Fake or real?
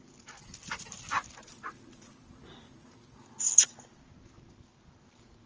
real